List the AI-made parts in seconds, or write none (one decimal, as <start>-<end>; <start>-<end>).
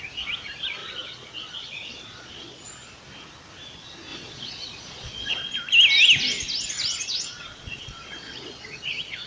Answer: 0.8-3.0; 4.1-5.3; 6.9-9.3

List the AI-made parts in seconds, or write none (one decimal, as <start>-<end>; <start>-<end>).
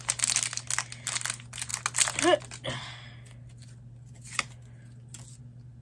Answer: none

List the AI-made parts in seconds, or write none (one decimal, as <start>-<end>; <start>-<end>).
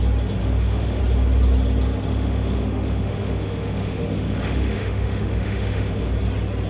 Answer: 0.4-1.0; 2.1-6.1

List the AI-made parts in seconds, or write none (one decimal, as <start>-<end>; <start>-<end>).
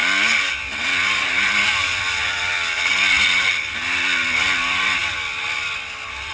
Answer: none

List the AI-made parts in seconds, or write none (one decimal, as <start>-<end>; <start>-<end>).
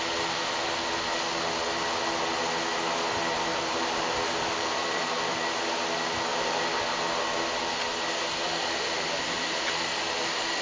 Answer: 3.5-5.4; 6.3-6.8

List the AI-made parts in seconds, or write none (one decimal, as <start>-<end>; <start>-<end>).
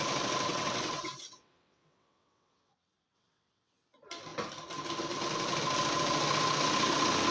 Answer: 0.5-3.8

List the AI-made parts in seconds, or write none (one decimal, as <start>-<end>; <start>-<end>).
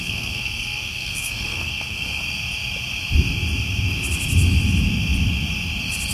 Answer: 0.0-2.2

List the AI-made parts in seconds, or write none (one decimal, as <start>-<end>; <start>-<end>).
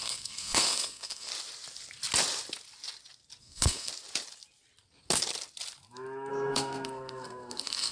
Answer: 0.0-1.3; 3.4-3.9; 6.3-7.9